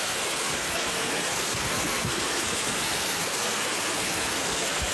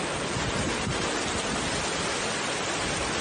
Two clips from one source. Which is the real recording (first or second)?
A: second